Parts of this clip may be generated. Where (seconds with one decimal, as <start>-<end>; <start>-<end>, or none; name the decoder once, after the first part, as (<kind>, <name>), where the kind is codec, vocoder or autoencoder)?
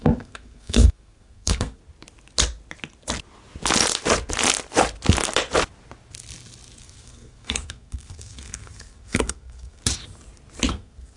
0.0-1.8 (codec, SNAC); 6.8-9.8; 10.7-11.2